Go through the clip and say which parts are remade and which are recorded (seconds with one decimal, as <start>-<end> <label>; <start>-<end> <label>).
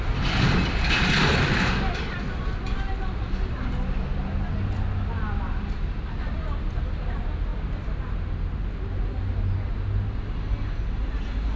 0.0-11.6 recorded